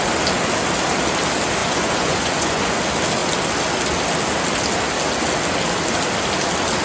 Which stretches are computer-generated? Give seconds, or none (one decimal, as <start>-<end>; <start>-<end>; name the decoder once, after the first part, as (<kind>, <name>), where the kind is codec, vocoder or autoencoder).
1.6-2.8 (vocoder, Vocos)